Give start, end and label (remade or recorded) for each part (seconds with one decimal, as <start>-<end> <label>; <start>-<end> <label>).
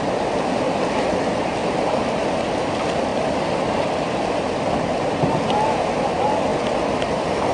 0.0-1.6 recorded; 1.6-2.7 remade; 2.7-3.1 recorded; 3.1-5.3 remade; 5.3-6.5 recorded; 6.5-7.5 remade